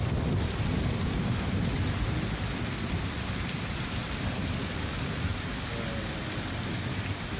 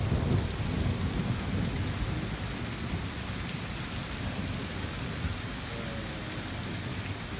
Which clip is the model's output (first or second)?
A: first